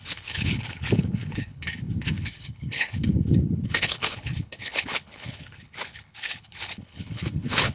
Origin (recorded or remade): remade